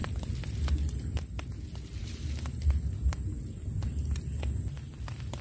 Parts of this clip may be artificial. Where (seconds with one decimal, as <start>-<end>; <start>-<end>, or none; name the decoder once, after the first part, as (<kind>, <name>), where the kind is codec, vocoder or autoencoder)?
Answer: none